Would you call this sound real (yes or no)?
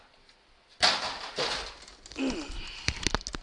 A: yes